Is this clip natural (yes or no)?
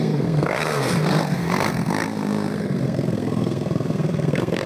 no